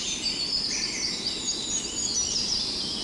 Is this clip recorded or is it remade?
recorded